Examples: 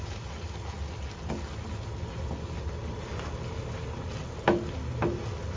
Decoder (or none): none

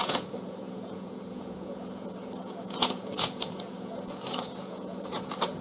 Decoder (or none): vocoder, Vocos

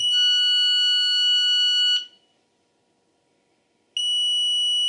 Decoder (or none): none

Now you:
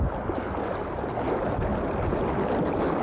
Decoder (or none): none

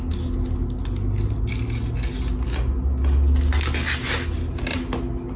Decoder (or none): none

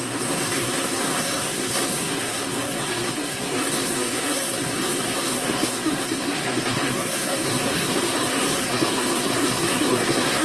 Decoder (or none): codec, SNAC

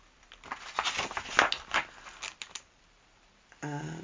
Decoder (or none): none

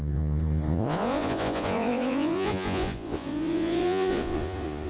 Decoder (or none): vocoder, Vocos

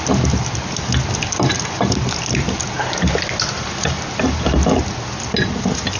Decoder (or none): none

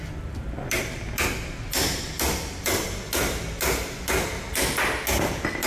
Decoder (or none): none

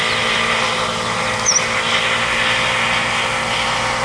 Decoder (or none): none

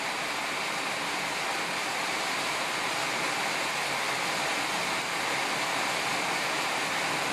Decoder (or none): none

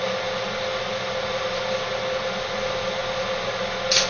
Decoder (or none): none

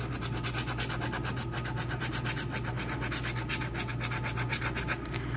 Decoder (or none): none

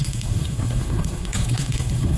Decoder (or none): codec, SNAC